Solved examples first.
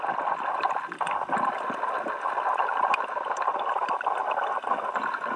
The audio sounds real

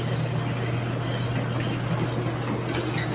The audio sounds real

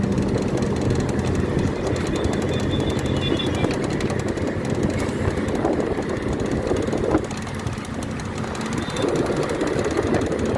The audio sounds real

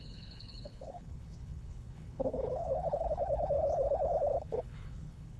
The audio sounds fake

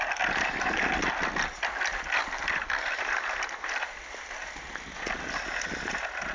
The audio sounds real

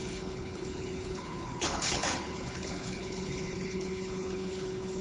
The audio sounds fake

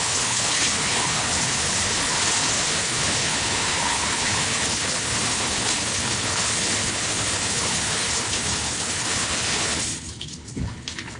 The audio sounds fake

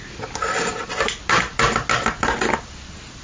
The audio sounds real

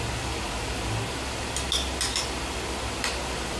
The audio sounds real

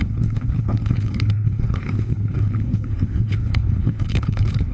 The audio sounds fake